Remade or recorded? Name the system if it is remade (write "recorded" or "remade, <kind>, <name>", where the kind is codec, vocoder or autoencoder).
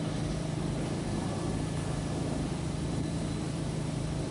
remade, vocoder, BigVGAN v2